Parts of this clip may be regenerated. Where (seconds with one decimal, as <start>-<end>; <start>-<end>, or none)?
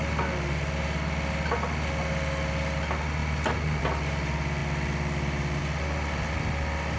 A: none